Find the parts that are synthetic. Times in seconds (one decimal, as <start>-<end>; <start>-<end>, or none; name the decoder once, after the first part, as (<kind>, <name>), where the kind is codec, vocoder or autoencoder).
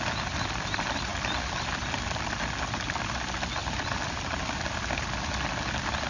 none